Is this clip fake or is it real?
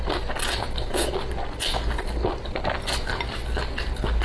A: real